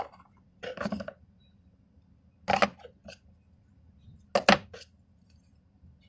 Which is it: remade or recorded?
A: recorded